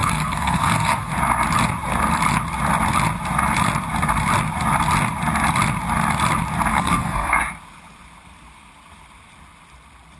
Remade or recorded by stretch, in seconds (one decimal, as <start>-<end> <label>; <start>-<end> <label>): 0.0-1.1 remade; 1.1-6.7 recorded; 6.7-7.4 remade; 7.4-10.2 recorded